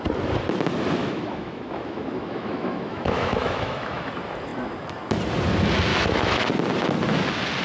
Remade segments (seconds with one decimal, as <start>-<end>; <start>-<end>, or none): 1.0-4.1; 5.9-6.5